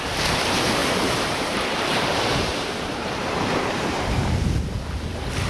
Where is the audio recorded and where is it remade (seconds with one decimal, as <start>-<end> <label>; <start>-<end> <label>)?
0.0-0.8 recorded; 0.8-4.1 remade; 4.1-5.5 recorded